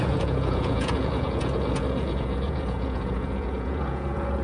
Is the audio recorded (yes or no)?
no